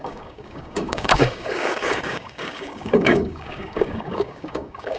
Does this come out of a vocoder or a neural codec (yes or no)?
yes